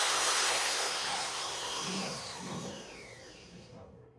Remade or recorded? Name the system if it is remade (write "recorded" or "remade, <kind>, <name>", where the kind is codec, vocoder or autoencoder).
remade, codec, SNAC